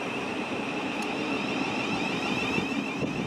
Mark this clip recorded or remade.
remade